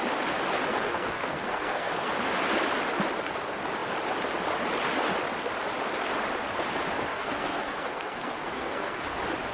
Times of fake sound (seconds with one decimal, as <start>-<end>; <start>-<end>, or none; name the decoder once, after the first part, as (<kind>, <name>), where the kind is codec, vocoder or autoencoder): 0.7-2.1 (codec, SNAC); 7.1-9.0